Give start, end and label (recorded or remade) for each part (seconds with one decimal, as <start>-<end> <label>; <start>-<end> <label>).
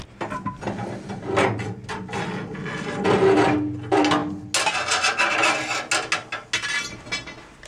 0.0-7.7 recorded